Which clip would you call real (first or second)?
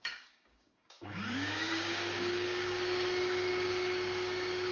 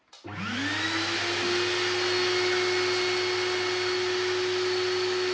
second